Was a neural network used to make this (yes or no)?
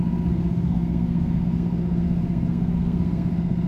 yes